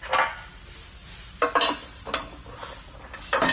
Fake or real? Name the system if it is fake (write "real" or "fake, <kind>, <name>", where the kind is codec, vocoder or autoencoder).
real